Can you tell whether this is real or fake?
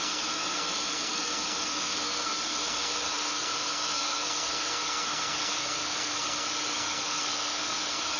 fake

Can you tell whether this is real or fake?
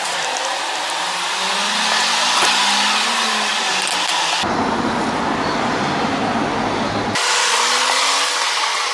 real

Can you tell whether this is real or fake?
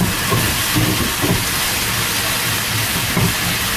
real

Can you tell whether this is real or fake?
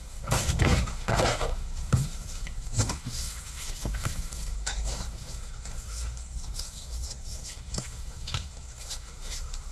fake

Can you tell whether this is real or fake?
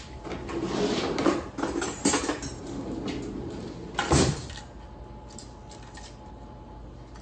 real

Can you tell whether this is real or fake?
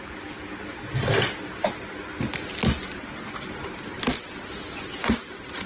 real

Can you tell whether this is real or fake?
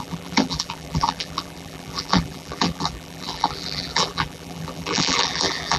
fake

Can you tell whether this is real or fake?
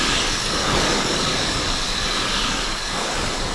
fake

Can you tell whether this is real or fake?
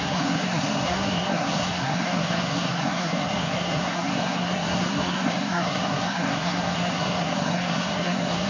fake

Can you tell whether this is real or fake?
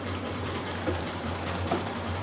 fake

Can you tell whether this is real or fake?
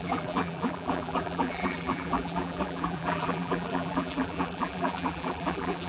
fake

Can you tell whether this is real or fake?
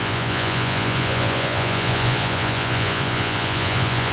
fake